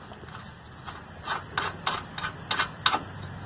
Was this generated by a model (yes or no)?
no